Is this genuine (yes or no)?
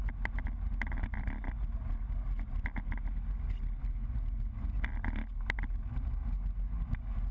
yes